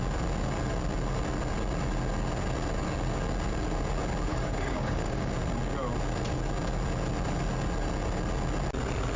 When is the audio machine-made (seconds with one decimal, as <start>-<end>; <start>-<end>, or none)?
4.3-5.3